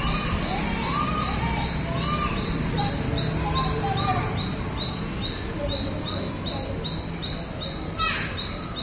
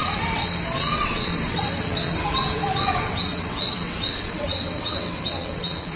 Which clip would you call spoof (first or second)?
second